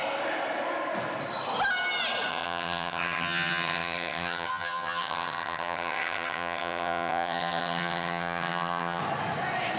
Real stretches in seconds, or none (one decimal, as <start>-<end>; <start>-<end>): 0.0-2.3; 9.0-9.8